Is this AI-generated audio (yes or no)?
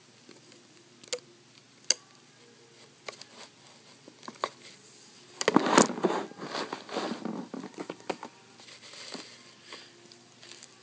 no